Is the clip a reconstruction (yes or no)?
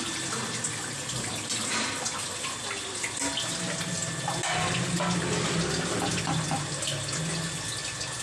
no